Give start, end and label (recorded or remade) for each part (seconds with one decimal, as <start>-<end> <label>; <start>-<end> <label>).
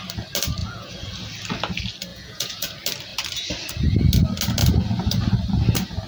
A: 0.0-0.6 recorded; 0.6-1.1 remade; 1.1-2.1 recorded; 2.1-2.7 remade; 2.7-6.1 recorded